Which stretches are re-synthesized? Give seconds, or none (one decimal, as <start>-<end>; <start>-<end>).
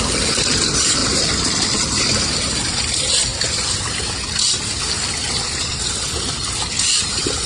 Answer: 0.0-3.3; 5.3-7.5